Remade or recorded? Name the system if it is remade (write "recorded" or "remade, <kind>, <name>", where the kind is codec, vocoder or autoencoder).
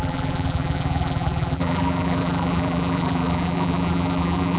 remade, vocoder, BigVGAN v2